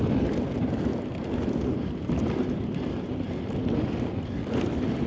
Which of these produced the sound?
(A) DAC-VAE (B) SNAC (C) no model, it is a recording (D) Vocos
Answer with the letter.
C